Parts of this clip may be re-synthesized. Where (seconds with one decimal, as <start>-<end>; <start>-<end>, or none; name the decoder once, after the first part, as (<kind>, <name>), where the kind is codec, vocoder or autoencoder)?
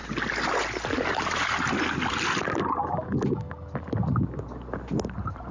none